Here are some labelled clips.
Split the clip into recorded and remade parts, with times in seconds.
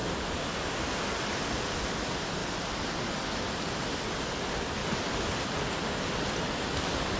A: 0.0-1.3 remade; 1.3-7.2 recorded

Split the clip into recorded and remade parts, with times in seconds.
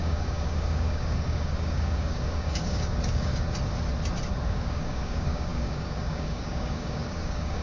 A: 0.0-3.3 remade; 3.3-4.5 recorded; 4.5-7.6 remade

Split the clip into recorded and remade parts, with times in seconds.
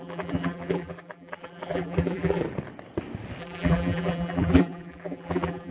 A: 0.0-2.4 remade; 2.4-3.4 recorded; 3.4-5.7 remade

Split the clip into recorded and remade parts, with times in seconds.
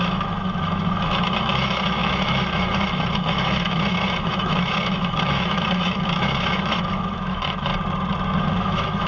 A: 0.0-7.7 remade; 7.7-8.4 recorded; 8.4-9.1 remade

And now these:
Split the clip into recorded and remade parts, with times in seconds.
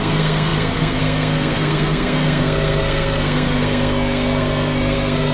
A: 0.0-5.3 remade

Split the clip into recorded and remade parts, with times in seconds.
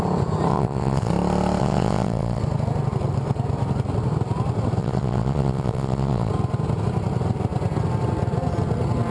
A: 0.0-0.5 recorded; 0.5-1.1 remade; 1.1-1.6 recorded; 1.6-2.4 remade; 2.4-4.8 recorded; 4.8-6.3 remade; 6.3-9.1 recorded